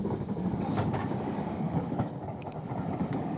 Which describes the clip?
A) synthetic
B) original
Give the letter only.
A